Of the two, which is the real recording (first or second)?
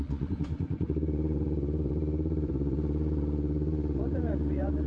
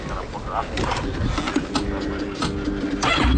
second